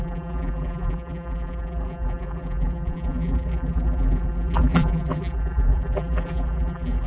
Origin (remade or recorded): remade